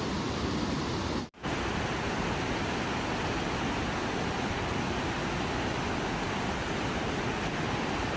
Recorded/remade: recorded